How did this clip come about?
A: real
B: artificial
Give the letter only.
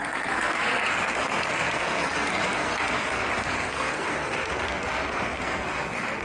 B